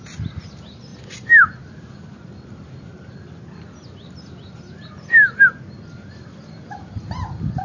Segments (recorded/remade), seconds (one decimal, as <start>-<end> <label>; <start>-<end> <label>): 0.0-7.6 recorded